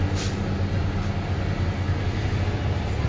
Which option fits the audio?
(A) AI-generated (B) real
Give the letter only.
B